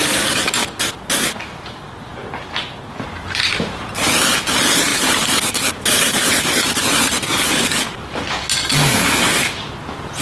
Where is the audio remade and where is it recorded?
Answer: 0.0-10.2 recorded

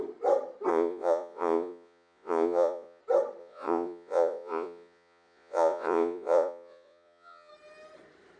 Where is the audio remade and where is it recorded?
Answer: 0.0-0.7 recorded; 0.7-3.0 remade; 3.0-3.4 recorded; 3.4-7.5 remade; 7.5-8.4 recorded

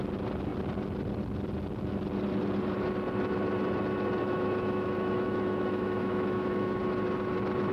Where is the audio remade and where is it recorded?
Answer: 0.0-4.2 recorded; 4.2-6.8 remade; 6.8-7.7 recorded

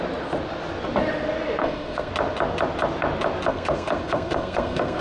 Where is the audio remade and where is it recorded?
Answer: 0.0-1.6 recorded; 1.6-2.1 remade; 2.1-3.5 recorded; 3.5-5.0 remade